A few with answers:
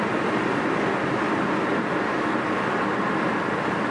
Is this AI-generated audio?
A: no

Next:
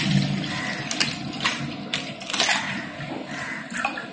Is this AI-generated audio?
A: no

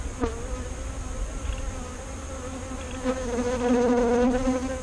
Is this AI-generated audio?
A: no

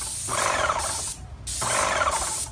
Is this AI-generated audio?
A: no